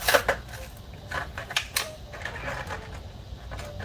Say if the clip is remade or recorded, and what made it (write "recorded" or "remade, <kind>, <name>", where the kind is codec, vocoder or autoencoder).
recorded